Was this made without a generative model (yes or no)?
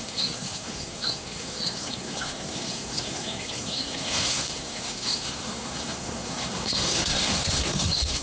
no